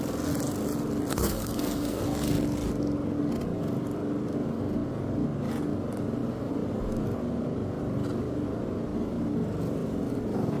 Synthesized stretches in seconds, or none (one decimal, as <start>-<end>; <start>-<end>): 1.1-2.0